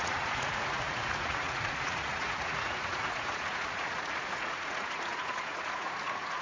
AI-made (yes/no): yes